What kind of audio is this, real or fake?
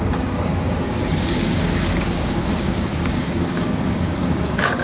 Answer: fake